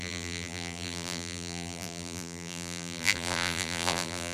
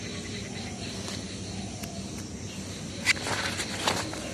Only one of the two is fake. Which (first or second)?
first